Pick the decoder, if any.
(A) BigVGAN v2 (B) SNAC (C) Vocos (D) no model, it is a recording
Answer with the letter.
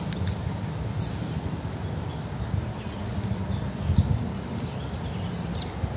D